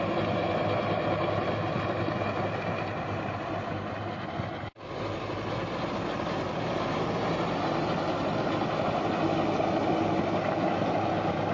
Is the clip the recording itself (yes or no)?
yes